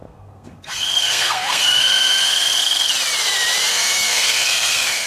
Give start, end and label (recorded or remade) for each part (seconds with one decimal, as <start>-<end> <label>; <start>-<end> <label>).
0.0-2.9 remade; 2.9-3.7 recorded; 3.7-5.1 remade